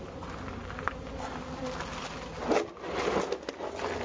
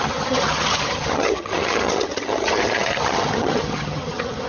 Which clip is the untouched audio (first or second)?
first